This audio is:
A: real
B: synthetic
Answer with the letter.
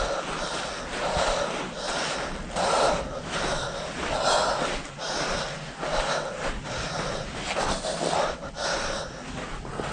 A